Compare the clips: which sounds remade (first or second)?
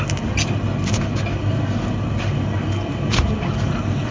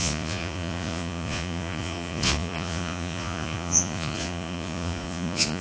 second